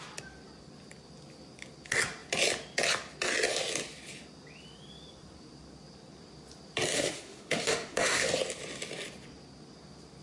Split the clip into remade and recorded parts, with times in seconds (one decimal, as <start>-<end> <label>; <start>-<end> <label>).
0.0-6.9 recorded; 6.9-8.3 remade; 8.3-10.2 recorded